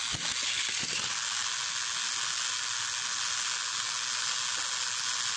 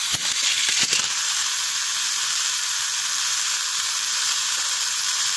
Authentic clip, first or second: first